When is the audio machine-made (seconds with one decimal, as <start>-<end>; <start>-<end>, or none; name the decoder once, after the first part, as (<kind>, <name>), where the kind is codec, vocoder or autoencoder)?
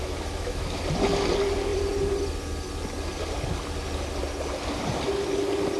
0.0-0.8 (autoencoder, DAC-VAE)